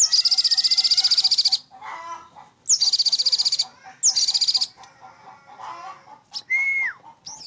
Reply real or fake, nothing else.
real